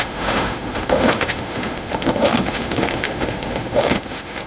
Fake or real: fake